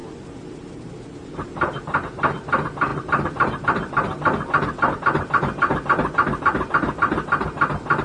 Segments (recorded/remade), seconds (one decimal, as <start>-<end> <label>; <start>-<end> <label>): 0.0-2.9 recorded; 2.9-4.9 remade; 4.9-8.0 recorded